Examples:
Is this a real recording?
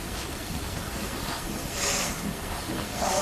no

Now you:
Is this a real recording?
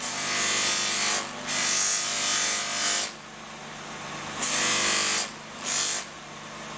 yes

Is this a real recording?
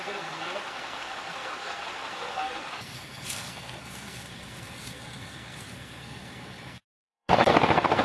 no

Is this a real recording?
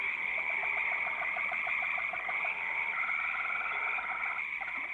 yes